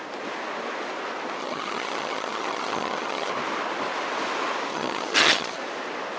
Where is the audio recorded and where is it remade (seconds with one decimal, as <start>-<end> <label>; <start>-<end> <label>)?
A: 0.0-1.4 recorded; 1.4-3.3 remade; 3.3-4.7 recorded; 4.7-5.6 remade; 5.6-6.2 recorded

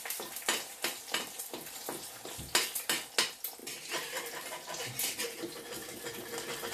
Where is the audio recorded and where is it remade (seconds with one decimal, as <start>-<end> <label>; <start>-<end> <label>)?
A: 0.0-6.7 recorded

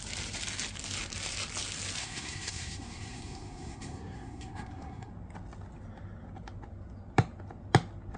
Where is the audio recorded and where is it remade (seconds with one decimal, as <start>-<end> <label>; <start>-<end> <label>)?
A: 0.0-2.0 recorded; 2.0-5.1 remade; 5.1-8.2 recorded

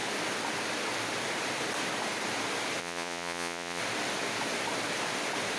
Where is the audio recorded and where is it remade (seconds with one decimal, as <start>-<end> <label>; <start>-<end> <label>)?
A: 0.0-2.8 recorded; 2.8-3.8 remade; 3.8-5.6 recorded